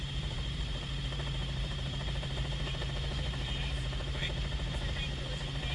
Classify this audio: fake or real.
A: fake